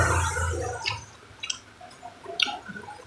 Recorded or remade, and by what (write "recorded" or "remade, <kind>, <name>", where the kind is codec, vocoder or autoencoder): recorded